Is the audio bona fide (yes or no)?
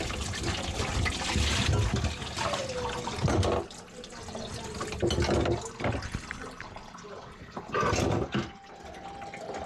yes